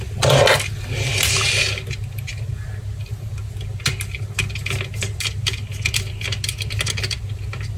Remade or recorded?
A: recorded